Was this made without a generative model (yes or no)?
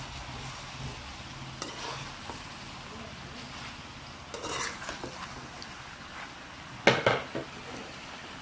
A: yes